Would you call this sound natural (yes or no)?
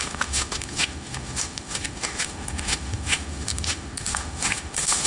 no